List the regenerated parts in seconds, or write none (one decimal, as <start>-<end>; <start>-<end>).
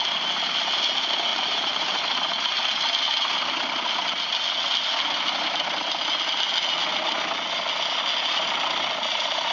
1.3-2.0